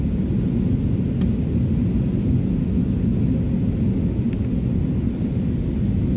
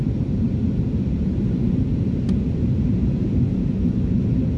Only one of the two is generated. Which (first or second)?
second